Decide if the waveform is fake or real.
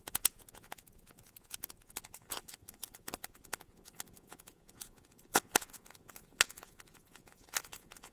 fake